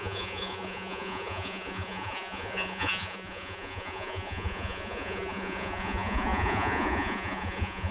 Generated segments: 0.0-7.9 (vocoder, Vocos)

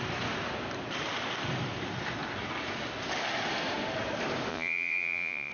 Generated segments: 4.5-5.5 (vocoder, Vocos)

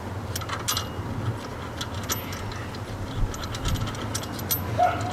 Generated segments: none

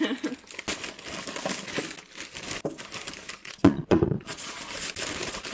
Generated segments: 3.4-4.6 (vocoder, Vocos)